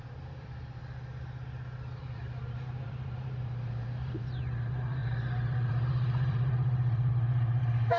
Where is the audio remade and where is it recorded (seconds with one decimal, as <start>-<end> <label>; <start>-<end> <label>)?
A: 0.0-0.8 remade; 0.8-2.0 recorded; 2.0-8.0 remade